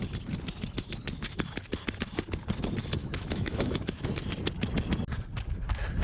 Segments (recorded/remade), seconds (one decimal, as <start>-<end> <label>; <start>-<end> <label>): 0.0-3.0 recorded; 3.0-4.1 remade; 4.1-6.0 recorded